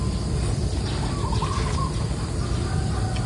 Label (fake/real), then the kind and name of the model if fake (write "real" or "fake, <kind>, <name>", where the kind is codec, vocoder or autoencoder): real